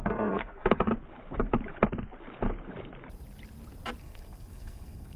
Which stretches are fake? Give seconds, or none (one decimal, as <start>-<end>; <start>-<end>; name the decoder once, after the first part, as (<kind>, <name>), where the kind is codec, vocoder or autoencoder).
0.0-0.9 (codec, SNAC); 4.0-5.2